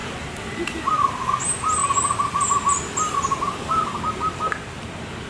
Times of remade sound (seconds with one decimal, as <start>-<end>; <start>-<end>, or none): 0.0-0.9